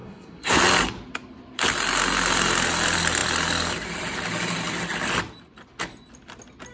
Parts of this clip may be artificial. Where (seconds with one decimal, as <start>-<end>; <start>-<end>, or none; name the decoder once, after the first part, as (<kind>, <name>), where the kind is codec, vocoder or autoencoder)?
0.0-0.6 (codec, SNAC)